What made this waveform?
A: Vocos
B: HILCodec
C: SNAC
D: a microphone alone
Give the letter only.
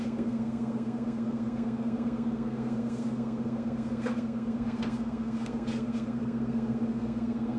C